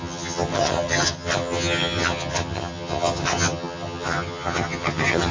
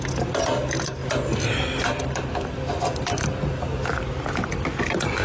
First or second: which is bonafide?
second